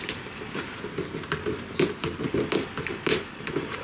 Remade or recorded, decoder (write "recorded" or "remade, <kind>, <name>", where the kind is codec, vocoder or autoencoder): recorded